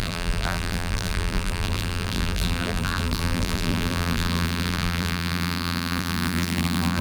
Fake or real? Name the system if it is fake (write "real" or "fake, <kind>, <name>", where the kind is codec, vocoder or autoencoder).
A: fake, vocoder, BigVGAN v2